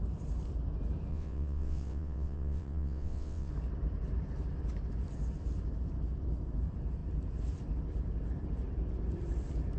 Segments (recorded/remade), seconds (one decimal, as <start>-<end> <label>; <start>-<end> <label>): 0.0-1.1 recorded; 1.1-3.5 remade; 3.5-9.8 recorded